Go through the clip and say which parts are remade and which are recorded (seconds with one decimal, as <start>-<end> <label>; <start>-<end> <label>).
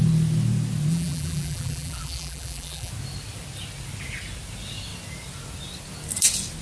0.0-0.9 recorded; 0.9-2.9 remade; 2.9-6.6 recorded